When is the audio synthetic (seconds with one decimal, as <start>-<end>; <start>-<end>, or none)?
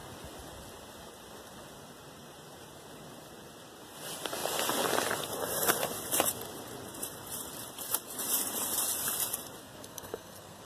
9.6-10.6